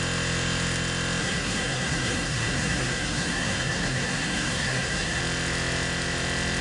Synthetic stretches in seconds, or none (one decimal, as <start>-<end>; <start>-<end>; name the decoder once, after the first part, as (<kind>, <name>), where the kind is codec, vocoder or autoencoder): 1.2-5.2 (codec, SNAC)